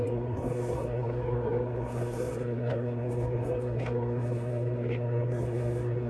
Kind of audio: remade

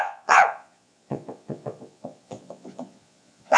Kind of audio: remade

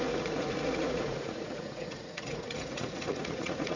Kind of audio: remade